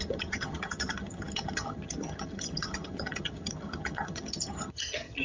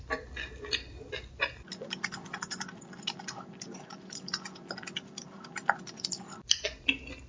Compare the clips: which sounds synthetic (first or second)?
first